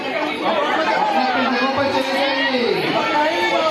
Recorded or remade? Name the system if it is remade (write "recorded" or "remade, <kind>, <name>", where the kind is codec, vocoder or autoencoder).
recorded